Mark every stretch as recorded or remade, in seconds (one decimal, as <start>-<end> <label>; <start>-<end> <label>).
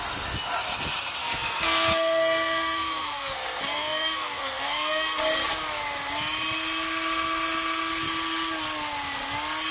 0.0-1.2 recorded; 1.2-5.2 remade; 5.2-9.7 recorded